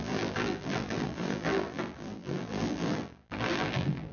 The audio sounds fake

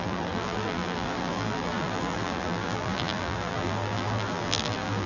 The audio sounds fake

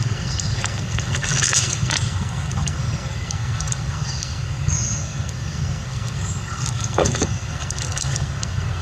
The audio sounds fake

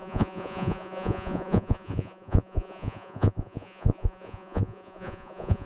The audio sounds fake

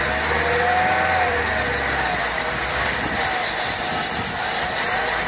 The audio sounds real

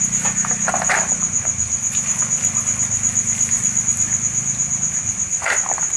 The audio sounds real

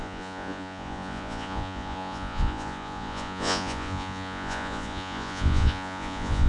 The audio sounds fake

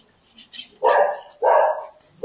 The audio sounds real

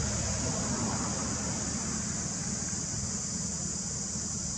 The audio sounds real